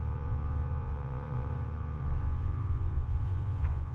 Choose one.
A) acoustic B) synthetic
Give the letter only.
B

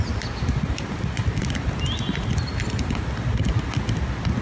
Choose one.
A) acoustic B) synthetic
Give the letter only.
A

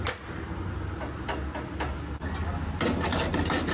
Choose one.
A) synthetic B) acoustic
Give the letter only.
B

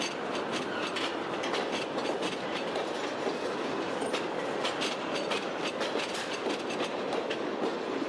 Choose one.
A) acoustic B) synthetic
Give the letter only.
A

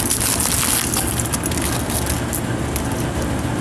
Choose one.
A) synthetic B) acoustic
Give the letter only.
B